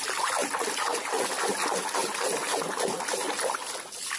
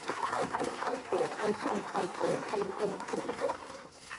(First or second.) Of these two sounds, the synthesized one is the second